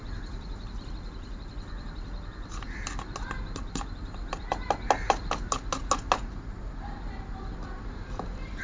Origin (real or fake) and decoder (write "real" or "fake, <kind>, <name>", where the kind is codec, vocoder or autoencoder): real